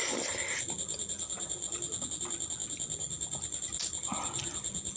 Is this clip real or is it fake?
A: real